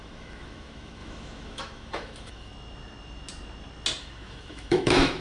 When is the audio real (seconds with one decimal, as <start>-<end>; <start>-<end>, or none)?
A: 2.5-4.0